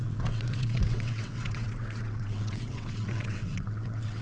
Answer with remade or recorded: remade